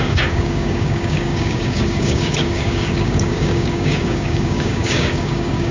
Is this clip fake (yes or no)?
yes